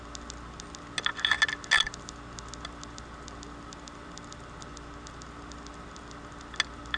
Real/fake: real